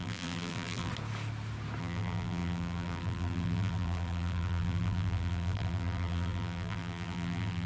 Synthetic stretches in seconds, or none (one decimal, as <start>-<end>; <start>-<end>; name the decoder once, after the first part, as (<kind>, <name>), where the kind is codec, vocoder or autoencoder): 0.0-0.9 (vocoder, BigVGAN v2); 1.8-7.7